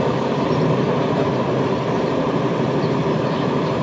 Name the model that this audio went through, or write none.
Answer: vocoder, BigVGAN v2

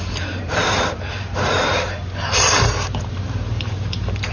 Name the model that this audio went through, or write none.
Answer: vocoder, BigVGAN v2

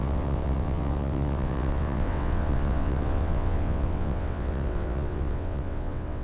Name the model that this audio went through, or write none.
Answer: vocoder, WaveNeXt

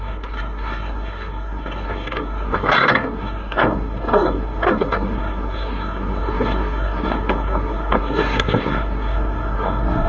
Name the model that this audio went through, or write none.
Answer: codec, SNAC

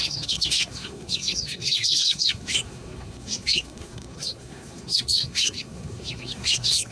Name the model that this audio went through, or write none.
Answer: codec, SNAC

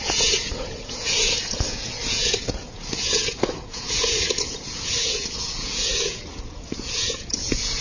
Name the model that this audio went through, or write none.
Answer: vocoder, Vocos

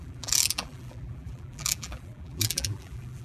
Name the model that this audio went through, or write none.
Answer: vocoder, BigVGAN v2